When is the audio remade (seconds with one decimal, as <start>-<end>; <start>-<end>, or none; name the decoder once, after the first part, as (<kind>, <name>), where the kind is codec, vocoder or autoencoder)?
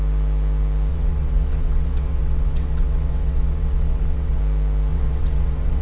0.9-4.4 (vocoder, WaveNeXt); 4.9-5.8